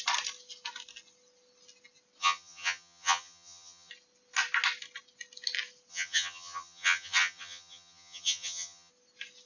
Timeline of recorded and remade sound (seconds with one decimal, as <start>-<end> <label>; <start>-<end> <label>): 0.0-2.2 recorded; 2.2-3.9 remade; 3.9-5.9 recorded; 5.9-8.9 remade; 8.9-9.5 recorded